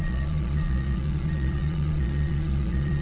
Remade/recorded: remade